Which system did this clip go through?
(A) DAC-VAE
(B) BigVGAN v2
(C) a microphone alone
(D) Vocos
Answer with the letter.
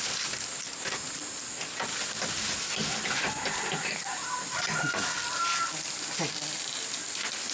C